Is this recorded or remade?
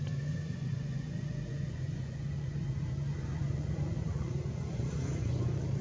remade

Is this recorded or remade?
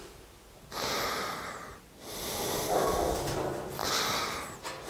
recorded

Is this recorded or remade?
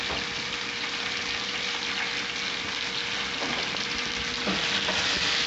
recorded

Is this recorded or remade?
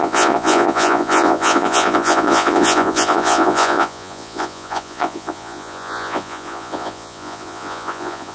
remade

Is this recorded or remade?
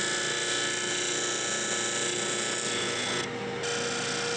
recorded